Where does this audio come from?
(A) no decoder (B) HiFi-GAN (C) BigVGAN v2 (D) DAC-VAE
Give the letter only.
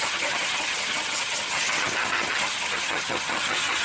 B